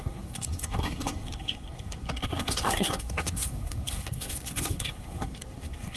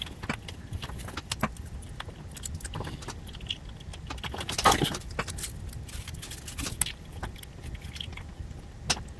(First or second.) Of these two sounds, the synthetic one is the first